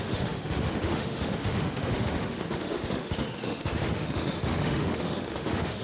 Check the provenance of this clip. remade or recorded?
remade